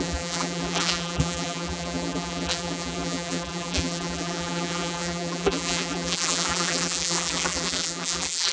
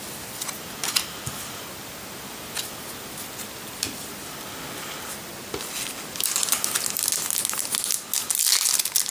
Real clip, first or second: second